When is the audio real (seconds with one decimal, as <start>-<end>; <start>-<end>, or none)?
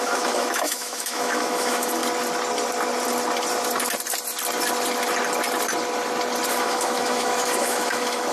2.0-6.5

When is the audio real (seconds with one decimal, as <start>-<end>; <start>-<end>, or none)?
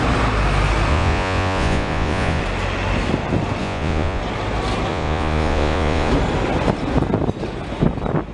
0.0-0.9; 2.4-3.6; 4.2-4.9; 6.1-8.3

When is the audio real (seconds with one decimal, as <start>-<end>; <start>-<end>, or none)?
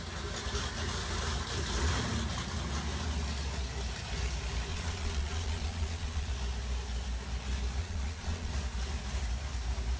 0.0-4.7; 6.3-7.8; 8.5-10.0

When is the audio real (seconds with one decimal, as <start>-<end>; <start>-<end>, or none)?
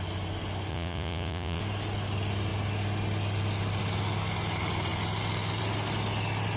0.0-0.7; 1.6-6.6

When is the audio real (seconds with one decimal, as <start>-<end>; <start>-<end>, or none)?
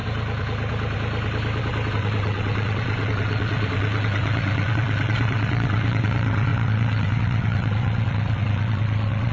0.0-1.9